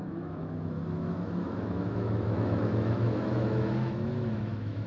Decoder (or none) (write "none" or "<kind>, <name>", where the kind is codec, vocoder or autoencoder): autoencoder, DAC-VAE